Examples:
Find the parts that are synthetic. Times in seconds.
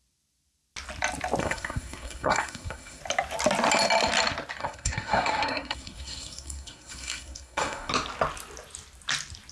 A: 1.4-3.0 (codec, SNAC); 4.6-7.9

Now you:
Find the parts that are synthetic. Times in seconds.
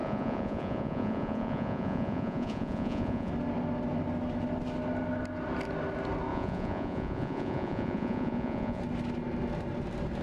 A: 0.0-3.3 (vocoder, Vocos); 6.3-8.8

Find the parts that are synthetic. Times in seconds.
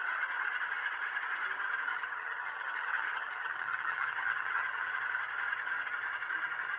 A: 1.9-5.0 (vocoder, HiFi-GAN)